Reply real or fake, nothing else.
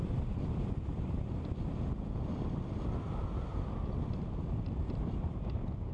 real